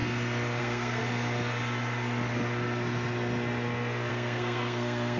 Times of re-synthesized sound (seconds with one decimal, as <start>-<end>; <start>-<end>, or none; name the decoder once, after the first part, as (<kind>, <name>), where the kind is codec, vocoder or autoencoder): 0.6-1.0 (codec, SNAC); 4.1-5.2